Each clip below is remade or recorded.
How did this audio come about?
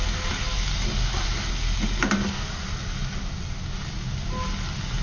recorded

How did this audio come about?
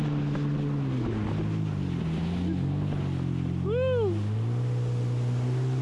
recorded